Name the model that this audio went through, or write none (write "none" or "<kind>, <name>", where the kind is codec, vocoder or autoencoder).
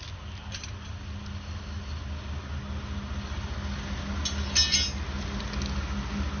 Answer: none